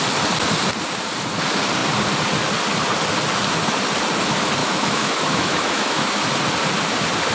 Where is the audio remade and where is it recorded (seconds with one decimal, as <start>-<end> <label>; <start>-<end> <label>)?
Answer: 0.0-4.6 recorded; 4.6-6.2 remade; 6.2-7.3 recorded